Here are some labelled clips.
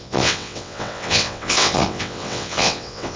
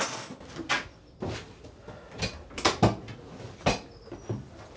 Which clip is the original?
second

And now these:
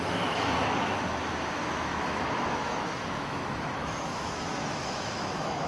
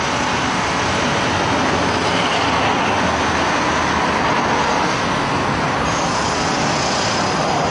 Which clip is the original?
second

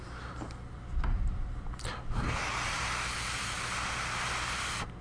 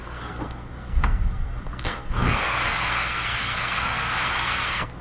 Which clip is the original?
first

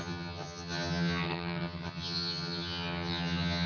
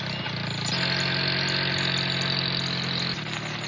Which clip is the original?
second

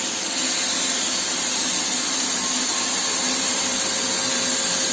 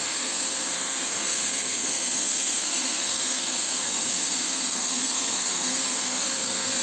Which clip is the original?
first